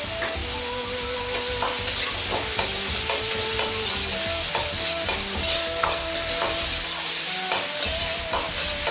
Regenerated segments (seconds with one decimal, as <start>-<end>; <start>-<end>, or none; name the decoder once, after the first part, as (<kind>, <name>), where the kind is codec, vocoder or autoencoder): 5.8-6.3 (codec, SNAC)